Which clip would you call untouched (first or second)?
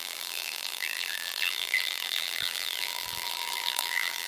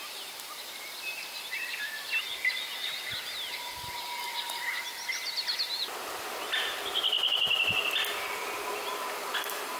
second